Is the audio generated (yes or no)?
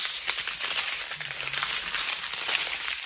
no